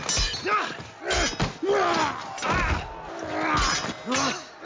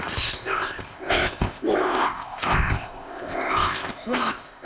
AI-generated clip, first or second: second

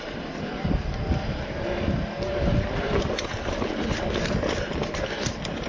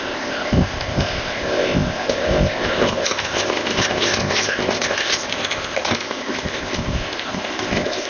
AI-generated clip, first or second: second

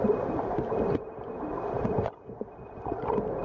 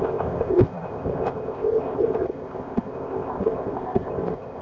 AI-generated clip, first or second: second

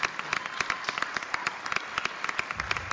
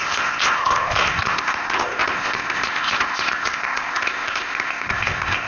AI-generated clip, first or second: second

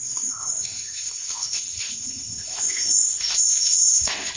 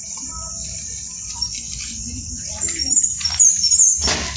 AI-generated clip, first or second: first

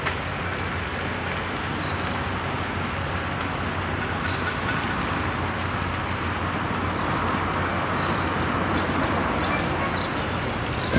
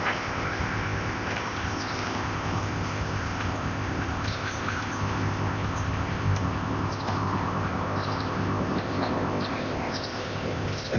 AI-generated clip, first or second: second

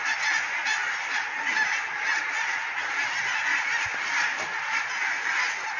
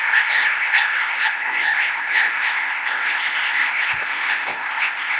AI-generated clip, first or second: second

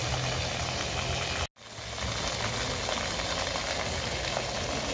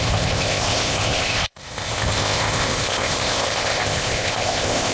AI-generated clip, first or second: second